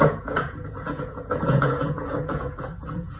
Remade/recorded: remade